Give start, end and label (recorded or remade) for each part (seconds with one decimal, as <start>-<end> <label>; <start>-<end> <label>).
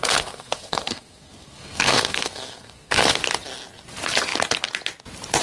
0.0-3.2 remade; 3.2-5.4 recorded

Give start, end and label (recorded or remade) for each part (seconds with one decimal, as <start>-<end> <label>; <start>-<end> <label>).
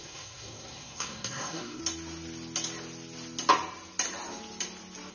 0.0-1.8 remade; 1.8-5.1 recorded